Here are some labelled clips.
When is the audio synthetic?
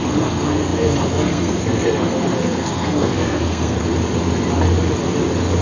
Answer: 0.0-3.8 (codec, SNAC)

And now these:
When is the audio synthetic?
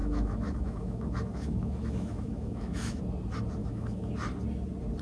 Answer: 0.0-3.0 (autoencoder, DAC-VAE); 3.6-4.1